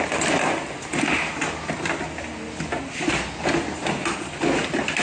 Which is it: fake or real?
real